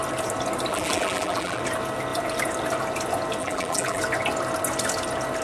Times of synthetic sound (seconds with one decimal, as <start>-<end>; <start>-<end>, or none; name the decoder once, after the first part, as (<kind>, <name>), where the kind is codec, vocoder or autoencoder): 0.7-1.6 (vocoder, BigVGAN v2); 3.4-4.0